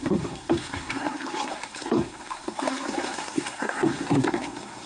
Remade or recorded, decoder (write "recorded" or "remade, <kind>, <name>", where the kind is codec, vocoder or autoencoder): remade, codec, SNAC